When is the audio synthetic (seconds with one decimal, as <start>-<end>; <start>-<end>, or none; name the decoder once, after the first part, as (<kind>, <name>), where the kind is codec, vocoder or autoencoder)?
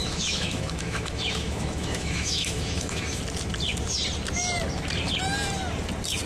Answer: 0.0-3.2 (autoencoder, DAC-VAE)